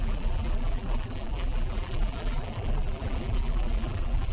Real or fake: fake